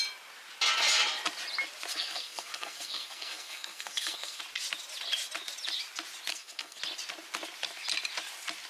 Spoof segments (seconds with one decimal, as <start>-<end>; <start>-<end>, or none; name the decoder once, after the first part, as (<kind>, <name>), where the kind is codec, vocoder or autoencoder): 1.9-4.4 (codec, SNAC); 6.3-6.8